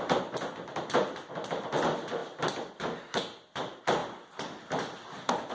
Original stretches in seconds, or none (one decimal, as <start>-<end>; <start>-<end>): 0.0-4.0